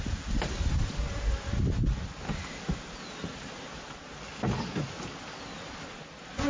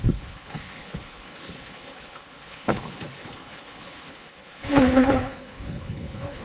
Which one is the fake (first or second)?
second